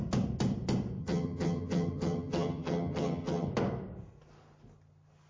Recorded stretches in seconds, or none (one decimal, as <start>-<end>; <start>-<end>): 0.0-1.0; 3.5-5.3